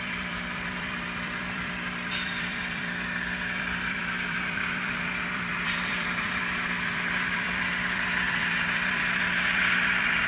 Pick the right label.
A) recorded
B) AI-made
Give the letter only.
B